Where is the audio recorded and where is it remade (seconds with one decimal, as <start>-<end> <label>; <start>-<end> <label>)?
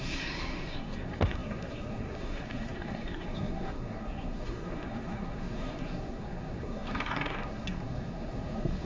0.0-8.9 remade